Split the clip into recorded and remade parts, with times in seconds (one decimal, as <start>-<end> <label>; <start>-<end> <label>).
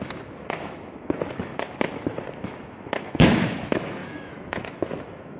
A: 0.0-1.5 remade; 1.5-2.4 recorded; 2.4-5.4 remade